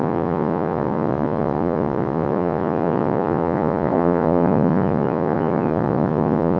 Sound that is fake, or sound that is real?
fake